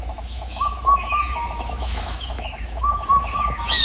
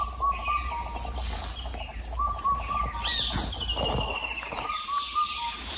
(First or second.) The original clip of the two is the second